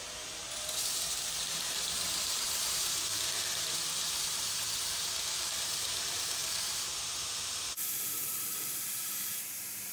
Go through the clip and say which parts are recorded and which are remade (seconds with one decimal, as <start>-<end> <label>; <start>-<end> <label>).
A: 0.0-0.4 remade; 0.4-1.5 recorded; 1.5-9.9 remade